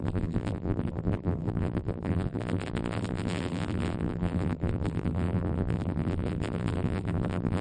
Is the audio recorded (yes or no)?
no